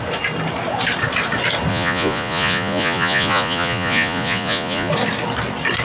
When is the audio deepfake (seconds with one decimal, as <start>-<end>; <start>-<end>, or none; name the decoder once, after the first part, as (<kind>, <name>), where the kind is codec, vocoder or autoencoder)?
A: 1.7-4.9 (vocoder, Vocos)